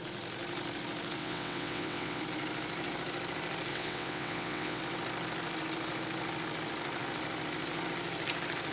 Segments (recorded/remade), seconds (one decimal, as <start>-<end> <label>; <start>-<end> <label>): 0.0-1.2 recorded; 1.2-2.2 remade; 2.2-3.7 recorded; 3.7-4.8 remade; 4.8-8.7 recorded